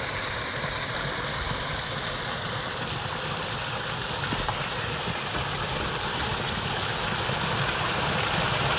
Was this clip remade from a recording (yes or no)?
no